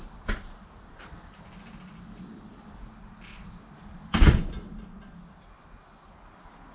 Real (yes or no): yes